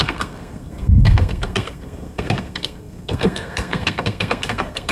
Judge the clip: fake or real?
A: fake